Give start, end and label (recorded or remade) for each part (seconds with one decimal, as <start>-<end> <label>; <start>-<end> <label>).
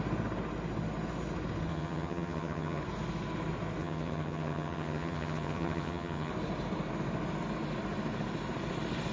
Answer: 0.0-1.7 recorded; 1.7-2.8 remade; 2.8-3.8 recorded; 3.8-6.3 remade; 6.3-9.1 recorded